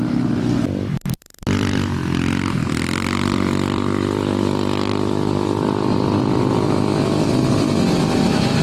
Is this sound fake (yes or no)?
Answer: yes